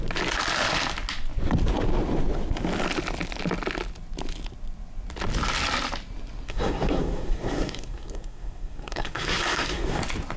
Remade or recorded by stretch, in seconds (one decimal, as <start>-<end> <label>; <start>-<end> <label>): 0.0-6.5 recorded; 6.5-10.0 remade; 10.0-10.4 recorded